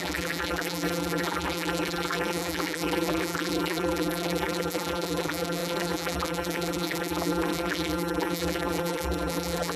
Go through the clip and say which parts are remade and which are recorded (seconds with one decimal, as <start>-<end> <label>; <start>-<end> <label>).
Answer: 0.0-9.8 remade